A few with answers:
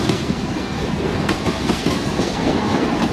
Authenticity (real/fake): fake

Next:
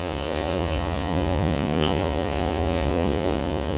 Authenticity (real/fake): fake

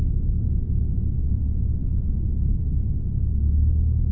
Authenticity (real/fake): real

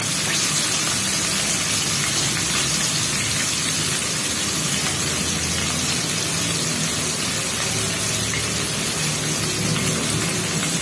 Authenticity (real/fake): real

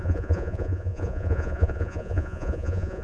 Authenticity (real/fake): fake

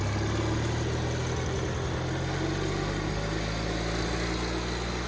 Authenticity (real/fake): real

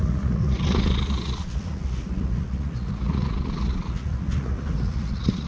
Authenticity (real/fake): fake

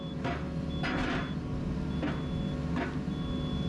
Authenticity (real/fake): real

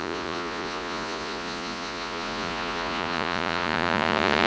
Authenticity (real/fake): fake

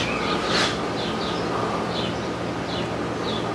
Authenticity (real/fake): real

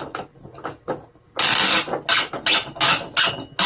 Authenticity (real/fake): real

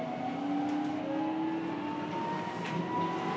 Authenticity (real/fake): real